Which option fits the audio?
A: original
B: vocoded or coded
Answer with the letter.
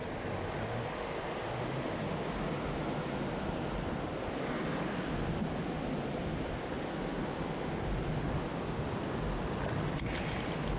A